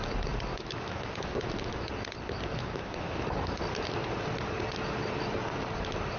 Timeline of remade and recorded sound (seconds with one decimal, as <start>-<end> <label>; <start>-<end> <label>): 0.0-0.5 recorded; 0.5-1.9 remade; 1.9-2.5 recorded; 2.5-3.6 remade; 3.6-6.2 recorded